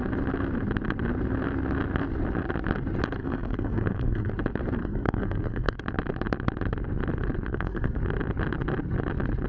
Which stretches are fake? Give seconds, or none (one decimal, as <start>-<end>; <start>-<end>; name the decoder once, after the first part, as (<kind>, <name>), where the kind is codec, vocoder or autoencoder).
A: 3.2-4.3 (codec, SNAC); 4.8-5.8; 7.5-8.0